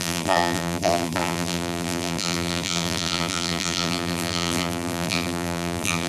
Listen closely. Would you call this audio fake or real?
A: fake